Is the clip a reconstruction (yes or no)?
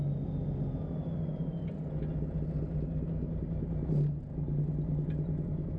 no